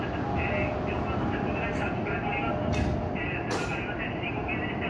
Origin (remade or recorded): recorded